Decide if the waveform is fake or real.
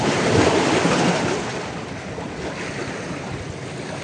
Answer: fake